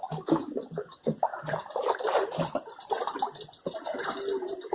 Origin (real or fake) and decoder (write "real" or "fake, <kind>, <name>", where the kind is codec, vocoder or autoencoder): real